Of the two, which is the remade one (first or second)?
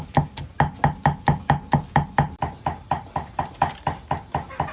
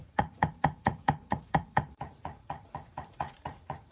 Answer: second